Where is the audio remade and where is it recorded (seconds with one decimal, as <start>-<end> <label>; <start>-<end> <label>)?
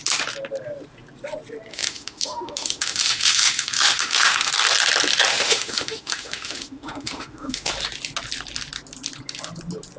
0.0-1.7 recorded; 1.7-4.5 remade; 4.5-5.3 recorded; 5.3-7.7 remade; 7.7-10.0 recorded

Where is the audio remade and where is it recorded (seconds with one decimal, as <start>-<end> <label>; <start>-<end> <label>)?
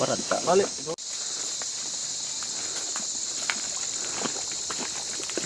0.0-5.5 recorded